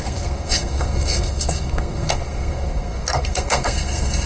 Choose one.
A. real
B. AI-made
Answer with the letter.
B